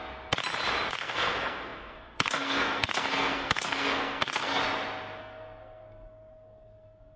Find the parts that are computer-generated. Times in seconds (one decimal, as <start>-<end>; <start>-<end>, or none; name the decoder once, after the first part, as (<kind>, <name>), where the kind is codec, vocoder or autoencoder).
0.9-4.6 (codec, SNAC); 5.2-7.2